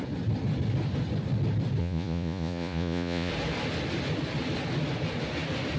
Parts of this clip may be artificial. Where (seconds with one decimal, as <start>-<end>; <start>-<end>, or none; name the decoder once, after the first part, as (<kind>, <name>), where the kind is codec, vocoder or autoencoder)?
1.8-3.3 (vocoder, Vocos)